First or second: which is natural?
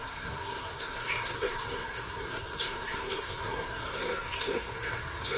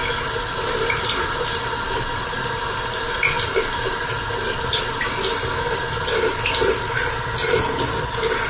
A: second